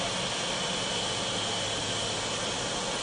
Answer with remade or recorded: recorded